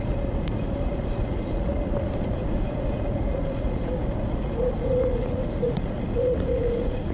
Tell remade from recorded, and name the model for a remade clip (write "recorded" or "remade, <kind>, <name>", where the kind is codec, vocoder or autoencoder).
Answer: remade, vocoder, Vocos